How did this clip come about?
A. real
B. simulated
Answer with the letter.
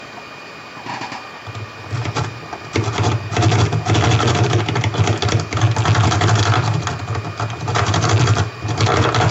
A